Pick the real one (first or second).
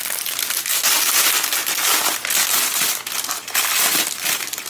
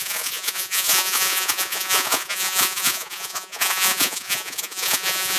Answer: first